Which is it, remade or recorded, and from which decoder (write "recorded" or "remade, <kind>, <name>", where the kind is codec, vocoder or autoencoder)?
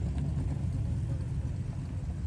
recorded